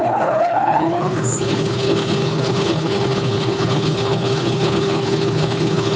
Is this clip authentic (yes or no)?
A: no